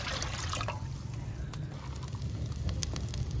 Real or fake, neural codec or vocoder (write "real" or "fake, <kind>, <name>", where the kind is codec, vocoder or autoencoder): real